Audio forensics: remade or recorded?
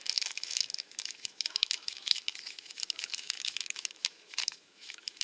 remade